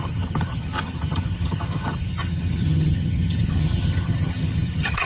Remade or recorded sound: remade